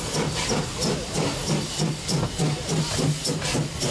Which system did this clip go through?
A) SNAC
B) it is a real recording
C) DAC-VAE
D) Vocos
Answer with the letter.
B